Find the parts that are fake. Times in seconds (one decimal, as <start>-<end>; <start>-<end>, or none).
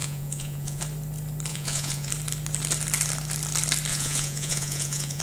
0.0-0.8; 1.5-2.1; 3.9-5.2